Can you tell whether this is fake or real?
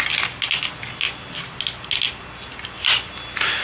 real